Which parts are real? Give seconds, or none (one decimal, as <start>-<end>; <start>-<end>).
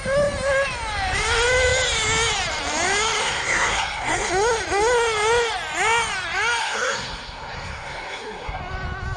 0.0-3.2; 4.3-6.6; 8.6-9.2